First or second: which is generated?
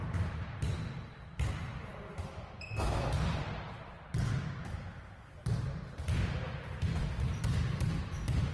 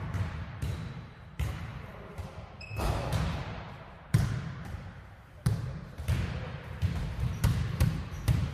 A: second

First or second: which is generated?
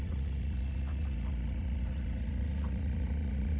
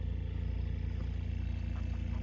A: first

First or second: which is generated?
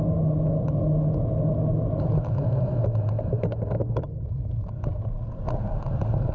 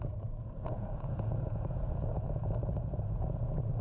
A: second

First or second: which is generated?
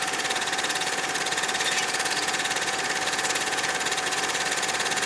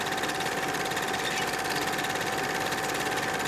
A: first